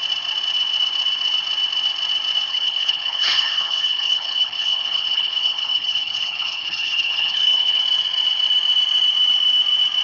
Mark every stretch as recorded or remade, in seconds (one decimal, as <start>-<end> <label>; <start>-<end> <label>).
0.0-2.5 recorded; 2.5-7.8 remade; 7.8-10.0 recorded